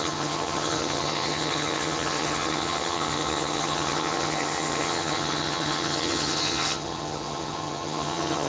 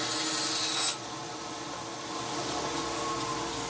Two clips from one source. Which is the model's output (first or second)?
first